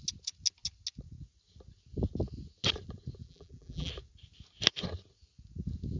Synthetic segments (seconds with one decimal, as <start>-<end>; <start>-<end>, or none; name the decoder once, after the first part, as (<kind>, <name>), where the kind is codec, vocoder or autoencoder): 3.2-3.9 (vocoder, BigVGAN v2)